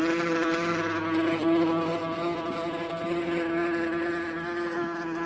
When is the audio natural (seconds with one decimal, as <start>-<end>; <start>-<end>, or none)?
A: 0.0-5.3